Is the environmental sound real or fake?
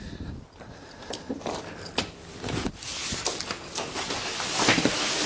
real